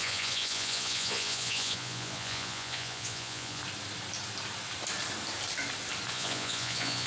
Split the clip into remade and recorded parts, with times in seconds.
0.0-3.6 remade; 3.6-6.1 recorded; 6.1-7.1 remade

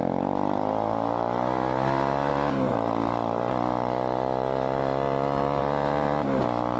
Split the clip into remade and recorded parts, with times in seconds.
0.0-6.8 recorded

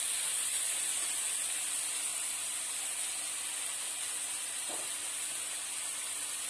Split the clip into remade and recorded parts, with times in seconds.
0.0-2.1 recorded; 2.1-2.8 remade; 2.8-6.5 recorded

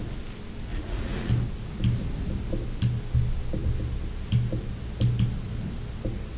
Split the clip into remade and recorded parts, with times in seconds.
0.0-0.7 recorded; 0.7-1.3 remade; 1.3-6.4 recorded

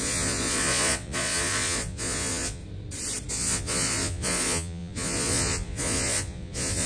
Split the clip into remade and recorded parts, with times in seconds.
0.0-2.6 remade; 2.6-3.3 recorded; 3.3-6.9 remade

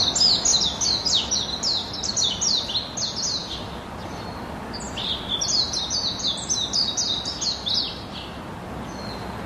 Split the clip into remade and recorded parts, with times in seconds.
0.0-9.5 recorded

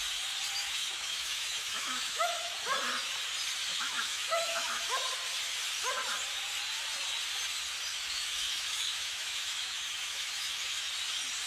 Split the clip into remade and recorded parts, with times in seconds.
0.0-0.6 recorded; 0.6-2.5 remade; 2.5-3.7 recorded; 3.7-4.8 remade; 4.8-7.9 recorded; 7.9-10.9 remade; 10.9-11.5 recorded